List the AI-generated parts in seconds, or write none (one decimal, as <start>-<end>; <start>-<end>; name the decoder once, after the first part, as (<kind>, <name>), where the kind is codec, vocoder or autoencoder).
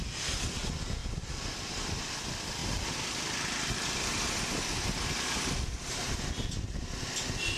1.0-2.1 (vocoder, BigVGAN v2); 2.6-6.3